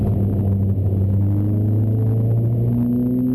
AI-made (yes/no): no